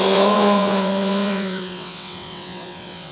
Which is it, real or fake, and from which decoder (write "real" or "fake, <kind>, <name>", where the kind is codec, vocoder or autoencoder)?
fake, vocoder, WaveNeXt